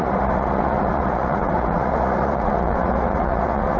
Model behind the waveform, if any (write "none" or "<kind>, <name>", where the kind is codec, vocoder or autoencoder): vocoder, Vocos